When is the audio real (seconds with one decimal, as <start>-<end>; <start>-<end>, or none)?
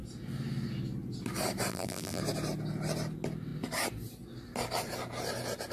0.0-1.7; 2.2-5.7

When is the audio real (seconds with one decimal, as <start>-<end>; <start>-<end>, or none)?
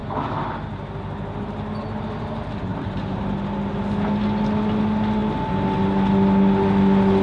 0.0-2.7; 3.2-7.2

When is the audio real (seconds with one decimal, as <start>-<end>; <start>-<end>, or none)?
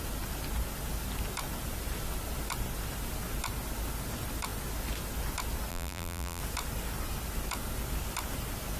0.0-5.7; 6.4-8.8